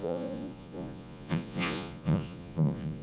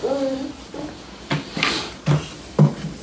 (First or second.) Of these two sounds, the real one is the second